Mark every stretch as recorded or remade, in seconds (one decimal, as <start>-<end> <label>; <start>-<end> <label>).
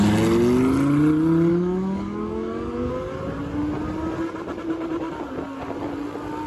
0.0-1.5 recorded; 1.5-2.9 remade; 2.9-6.5 recorded